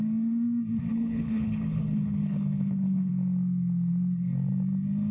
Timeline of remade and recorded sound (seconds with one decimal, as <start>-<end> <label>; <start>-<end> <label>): 0.0-0.9 recorded; 0.9-3.1 remade; 3.1-5.1 recorded